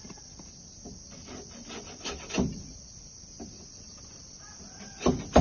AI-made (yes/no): no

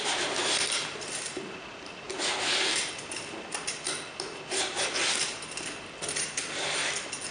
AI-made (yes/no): no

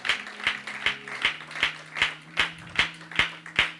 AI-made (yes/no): no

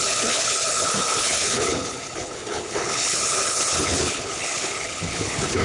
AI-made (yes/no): yes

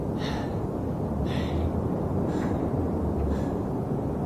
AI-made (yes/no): no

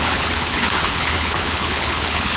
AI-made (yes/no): yes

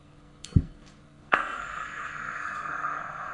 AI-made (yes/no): yes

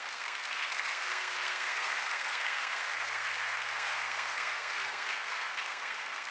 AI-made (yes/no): yes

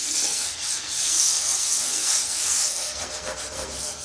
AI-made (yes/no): yes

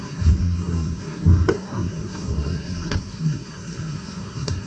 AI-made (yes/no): yes